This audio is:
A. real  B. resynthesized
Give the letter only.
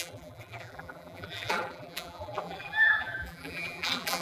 B